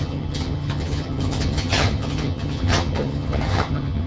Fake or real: fake